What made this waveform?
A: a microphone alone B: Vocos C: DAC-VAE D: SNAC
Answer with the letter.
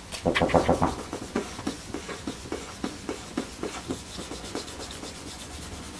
B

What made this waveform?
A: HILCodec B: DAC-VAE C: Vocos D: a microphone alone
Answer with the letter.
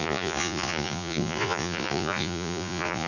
C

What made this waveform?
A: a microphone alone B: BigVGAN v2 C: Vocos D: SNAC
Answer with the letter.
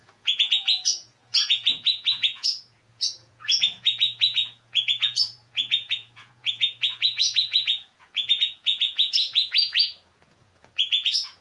C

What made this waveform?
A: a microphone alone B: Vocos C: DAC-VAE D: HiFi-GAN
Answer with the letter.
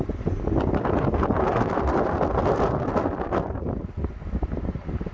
A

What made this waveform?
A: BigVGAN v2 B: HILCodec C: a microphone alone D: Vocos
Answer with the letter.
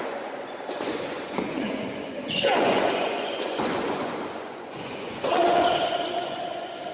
D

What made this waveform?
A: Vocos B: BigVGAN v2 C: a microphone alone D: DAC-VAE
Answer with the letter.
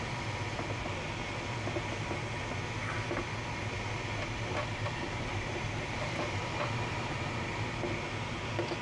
C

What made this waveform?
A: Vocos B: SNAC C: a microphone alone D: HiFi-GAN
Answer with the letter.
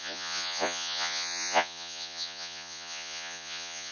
A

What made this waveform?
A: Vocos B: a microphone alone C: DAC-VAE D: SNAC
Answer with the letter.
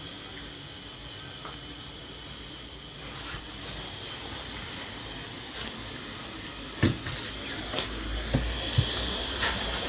B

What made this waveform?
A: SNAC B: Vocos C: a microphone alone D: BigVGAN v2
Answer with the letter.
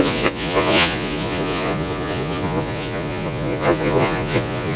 B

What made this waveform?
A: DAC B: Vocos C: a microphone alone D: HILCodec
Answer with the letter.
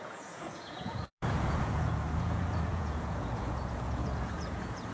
B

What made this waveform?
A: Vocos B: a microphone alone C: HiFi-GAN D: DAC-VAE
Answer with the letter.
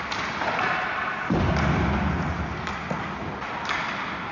B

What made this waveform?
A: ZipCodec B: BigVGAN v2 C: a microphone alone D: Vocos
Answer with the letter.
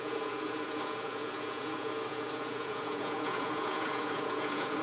D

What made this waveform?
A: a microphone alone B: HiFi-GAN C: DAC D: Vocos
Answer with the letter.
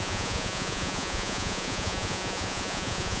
D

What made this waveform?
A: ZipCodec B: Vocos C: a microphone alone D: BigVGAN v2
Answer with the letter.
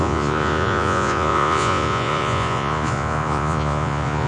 B